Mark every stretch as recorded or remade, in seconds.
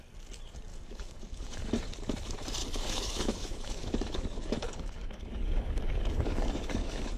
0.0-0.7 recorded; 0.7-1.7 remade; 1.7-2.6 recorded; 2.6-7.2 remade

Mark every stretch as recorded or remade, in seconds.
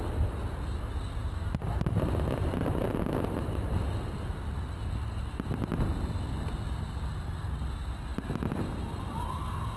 0.0-9.8 recorded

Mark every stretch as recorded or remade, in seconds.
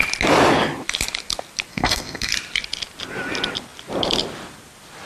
0.0-1.7 recorded; 1.7-2.3 remade; 2.3-5.1 recorded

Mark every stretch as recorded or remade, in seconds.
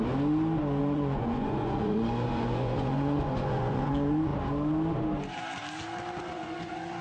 0.0-0.8 recorded; 0.8-4.3 remade; 4.3-6.3 recorded; 6.3-7.0 remade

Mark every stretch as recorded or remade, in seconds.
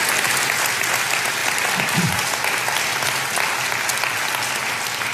0.0-5.1 recorded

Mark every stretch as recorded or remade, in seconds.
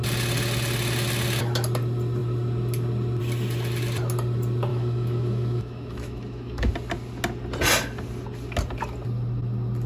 0.0-4.7 recorded; 4.7-6.7 remade; 6.7-9.9 recorded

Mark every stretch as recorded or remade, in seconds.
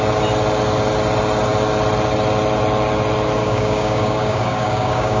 0.0-3.4 recorded; 3.4-5.2 remade